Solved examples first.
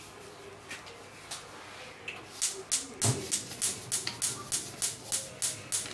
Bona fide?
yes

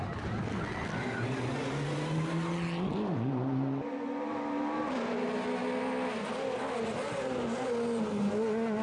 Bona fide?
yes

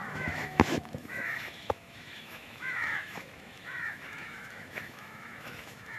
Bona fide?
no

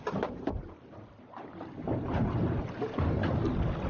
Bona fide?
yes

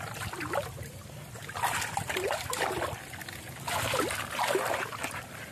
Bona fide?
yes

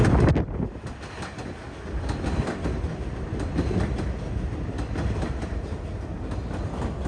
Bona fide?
yes